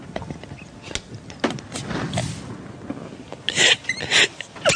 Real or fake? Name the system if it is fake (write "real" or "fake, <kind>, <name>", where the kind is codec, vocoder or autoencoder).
real